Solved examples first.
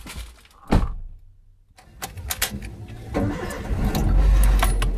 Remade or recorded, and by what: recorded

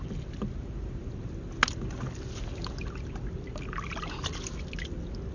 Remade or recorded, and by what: recorded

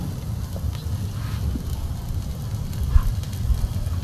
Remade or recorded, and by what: recorded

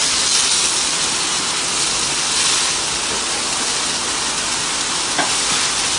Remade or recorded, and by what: recorded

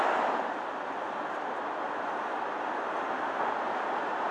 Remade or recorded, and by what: recorded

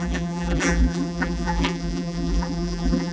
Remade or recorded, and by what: remade, vocoder, BigVGAN v2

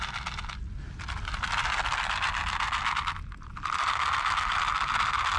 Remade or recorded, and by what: recorded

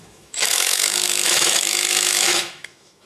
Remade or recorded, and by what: remade, autoencoder, DAC-VAE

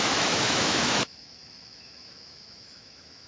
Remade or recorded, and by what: remade, autoencoder, DAC-VAE